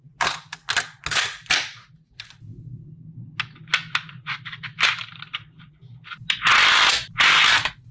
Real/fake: real